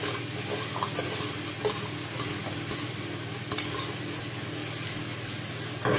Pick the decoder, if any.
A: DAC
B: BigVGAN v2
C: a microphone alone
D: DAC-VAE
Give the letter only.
C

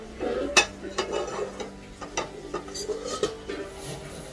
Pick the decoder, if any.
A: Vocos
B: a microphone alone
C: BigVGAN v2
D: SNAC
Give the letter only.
B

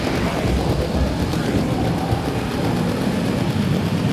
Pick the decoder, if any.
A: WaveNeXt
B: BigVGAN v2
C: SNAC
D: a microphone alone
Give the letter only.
D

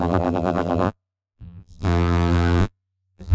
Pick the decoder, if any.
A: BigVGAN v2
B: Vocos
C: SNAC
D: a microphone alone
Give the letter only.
A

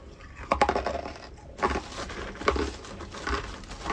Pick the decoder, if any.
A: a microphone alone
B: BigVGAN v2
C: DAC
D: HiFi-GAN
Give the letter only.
B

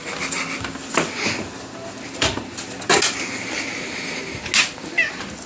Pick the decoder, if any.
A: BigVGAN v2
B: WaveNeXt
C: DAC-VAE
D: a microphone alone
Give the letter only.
D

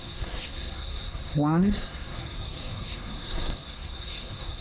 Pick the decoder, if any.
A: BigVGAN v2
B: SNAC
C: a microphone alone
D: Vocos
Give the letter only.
B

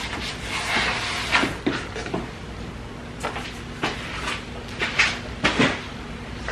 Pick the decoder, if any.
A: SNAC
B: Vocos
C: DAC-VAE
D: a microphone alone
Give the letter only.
D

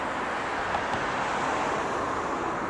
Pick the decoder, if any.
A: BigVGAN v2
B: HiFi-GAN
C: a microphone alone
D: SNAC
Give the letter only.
C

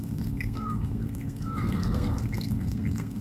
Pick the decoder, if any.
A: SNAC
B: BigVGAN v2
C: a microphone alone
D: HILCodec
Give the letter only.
A